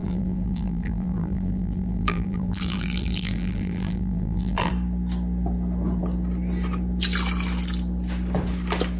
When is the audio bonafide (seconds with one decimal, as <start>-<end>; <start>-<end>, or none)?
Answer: 4.7-9.0